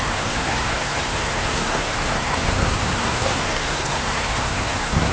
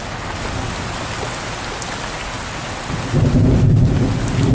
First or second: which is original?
second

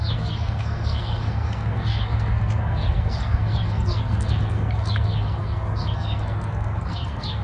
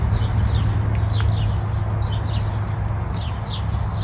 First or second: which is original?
second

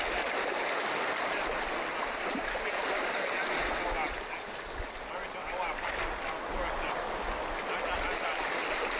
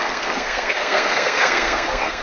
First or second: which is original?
first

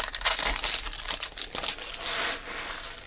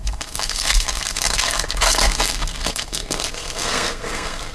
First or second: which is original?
first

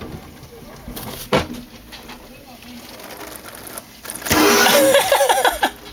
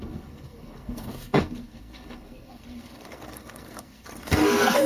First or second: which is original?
first